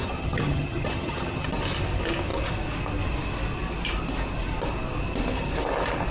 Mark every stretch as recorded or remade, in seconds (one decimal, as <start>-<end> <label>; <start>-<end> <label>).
0.0-1.5 remade; 1.5-6.1 recorded